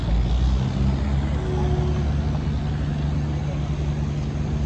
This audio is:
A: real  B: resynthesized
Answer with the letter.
A